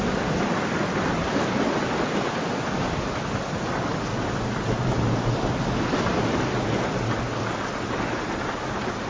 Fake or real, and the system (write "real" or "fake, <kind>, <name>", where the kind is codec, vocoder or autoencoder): real